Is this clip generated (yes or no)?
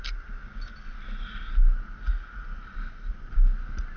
no